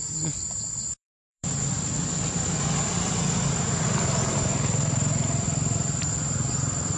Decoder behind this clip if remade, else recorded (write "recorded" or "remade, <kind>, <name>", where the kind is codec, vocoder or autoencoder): remade, vocoder, BigVGAN v2